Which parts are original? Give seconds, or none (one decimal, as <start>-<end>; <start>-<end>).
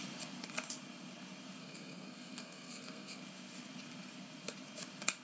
0.0-1.6; 3.2-5.2